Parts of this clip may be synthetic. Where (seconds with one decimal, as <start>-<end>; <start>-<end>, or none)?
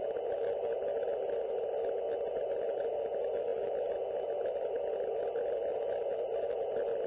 none